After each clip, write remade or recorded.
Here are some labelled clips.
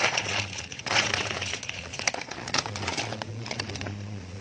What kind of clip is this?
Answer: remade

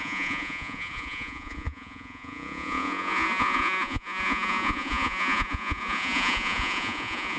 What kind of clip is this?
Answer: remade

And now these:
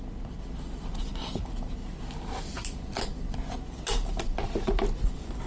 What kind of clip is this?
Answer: recorded